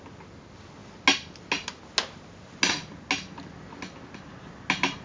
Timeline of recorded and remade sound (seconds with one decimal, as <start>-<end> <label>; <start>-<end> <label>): 0.0-5.0 recorded